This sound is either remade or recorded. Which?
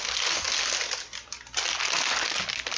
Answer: recorded